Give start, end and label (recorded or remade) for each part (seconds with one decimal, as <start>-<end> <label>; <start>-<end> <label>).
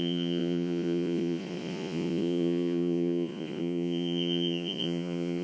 0.0-5.4 remade